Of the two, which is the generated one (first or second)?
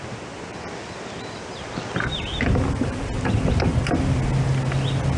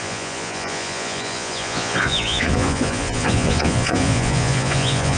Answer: second